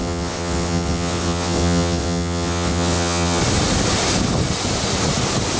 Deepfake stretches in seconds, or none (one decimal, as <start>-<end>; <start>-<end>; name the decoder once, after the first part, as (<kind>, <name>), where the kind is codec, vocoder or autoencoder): 0.0-3.4 (vocoder, WaveNeXt)